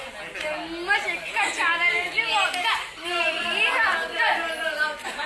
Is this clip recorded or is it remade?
recorded